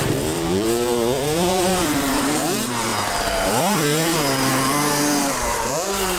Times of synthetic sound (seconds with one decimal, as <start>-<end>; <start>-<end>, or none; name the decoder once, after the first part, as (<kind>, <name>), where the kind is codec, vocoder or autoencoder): 0.0-4.5 (vocoder, BigVGAN v2); 5.2-6.2